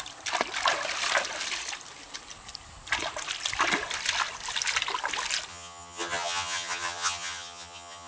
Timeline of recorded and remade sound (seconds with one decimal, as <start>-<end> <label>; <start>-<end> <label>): 0.0-5.5 recorded; 5.5-8.1 remade

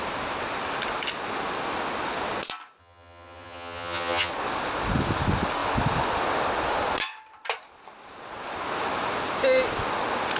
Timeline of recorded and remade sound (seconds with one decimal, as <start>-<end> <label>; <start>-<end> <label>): 0.0-2.8 recorded; 2.8-4.3 remade; 4.3-10.4 recorded